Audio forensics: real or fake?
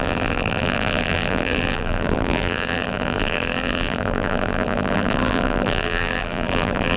fake